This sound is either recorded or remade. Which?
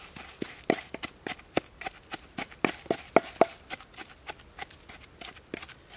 recorded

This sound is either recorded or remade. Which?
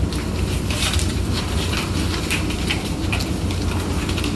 remade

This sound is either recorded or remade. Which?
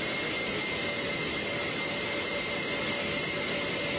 recorded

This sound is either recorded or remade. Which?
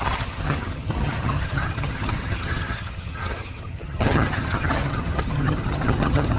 remade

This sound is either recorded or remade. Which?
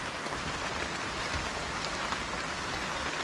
recorded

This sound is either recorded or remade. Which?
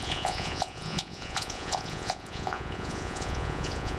remade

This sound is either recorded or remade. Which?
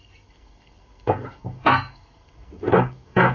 remade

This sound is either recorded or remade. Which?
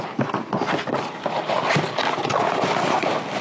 recorded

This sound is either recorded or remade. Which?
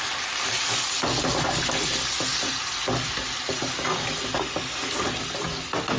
recorded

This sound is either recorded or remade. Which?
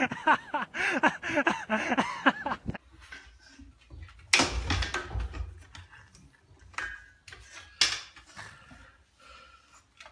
recorded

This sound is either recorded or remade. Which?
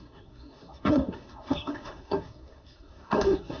remade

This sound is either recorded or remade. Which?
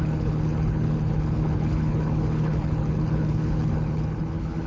remade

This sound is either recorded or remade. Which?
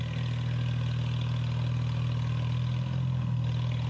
recorded